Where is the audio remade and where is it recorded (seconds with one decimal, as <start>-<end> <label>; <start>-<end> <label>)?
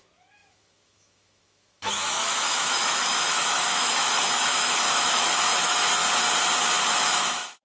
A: 0.0-6.0 remade; 6.0-6.6 recorded; 6.6-7.6 remade